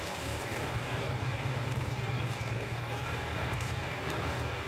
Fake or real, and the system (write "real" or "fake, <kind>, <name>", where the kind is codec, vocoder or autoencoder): fake, codec, DAC